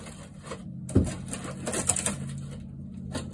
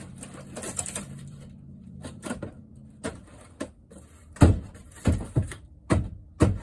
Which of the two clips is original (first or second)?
first